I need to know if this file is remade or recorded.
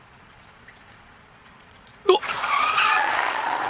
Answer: remade